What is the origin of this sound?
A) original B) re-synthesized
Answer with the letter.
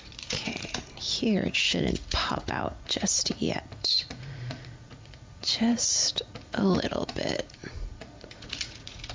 B